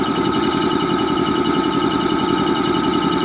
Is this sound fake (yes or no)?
no